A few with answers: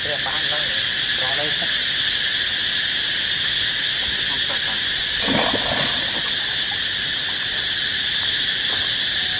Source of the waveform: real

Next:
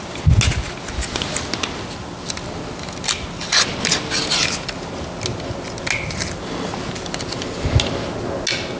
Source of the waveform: real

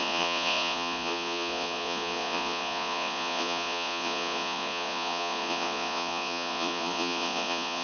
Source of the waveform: fake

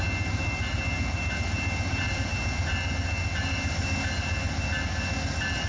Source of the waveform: real